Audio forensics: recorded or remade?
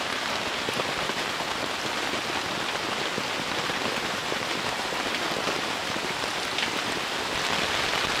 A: recorded